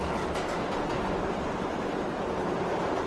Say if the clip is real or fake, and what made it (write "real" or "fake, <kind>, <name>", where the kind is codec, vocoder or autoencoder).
real